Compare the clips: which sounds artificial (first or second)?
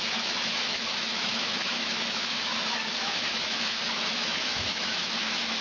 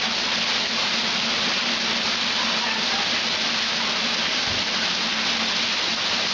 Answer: first